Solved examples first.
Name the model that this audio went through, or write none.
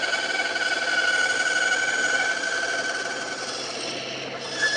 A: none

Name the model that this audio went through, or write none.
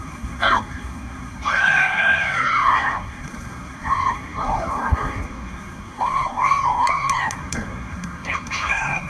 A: codec, SNAC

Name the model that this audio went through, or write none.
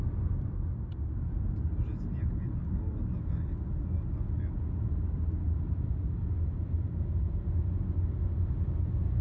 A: none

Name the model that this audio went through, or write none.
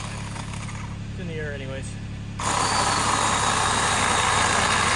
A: none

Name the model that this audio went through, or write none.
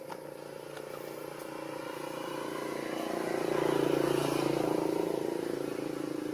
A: none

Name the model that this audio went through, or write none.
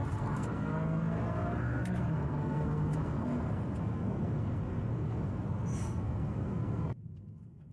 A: codec, SNAC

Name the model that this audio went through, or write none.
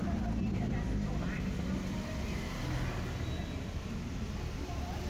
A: none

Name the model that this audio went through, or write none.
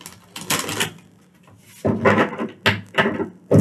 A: none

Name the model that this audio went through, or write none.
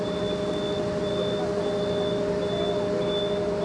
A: none